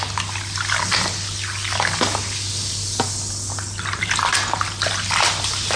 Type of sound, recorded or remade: recorded